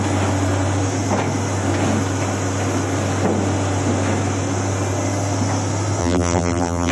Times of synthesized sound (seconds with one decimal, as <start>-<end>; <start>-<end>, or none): 6.0-6.9